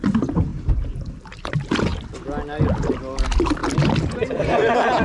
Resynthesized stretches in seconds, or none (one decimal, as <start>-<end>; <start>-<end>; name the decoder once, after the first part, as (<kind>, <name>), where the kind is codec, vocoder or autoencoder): 0.5-1.1 (vocoder, BigVGAN v2)